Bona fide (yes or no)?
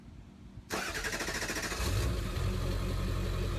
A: yes